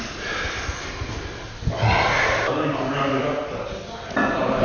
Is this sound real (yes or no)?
yes